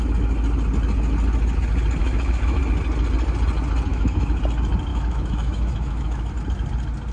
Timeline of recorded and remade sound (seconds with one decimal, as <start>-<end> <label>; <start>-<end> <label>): 0.0-2.0 recorded; 2.0-2.6 remade; 2.6-3.9 recorded; 3.9-4.4 remade; 4.4-4.9 recorded; 4.9-6.3 remade; 6.3-7.1 recorded